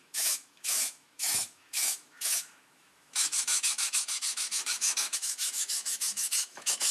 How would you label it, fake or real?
fake